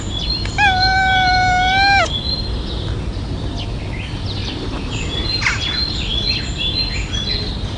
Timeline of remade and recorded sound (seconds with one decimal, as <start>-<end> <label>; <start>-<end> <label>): 0.0-7.8 recorded